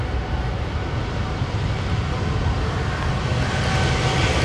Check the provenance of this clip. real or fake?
real